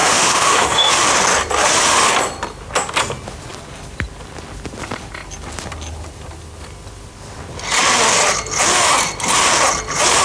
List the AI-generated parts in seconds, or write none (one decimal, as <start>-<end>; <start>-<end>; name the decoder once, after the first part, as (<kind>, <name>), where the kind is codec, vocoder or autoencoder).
0.0-0.9 (autoencoder, DAC-VAE)